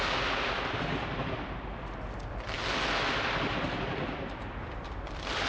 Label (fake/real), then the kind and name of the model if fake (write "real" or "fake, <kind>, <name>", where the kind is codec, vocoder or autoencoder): fake, vocoder, BigVGAN v2